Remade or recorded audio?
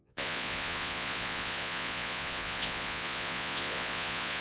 remade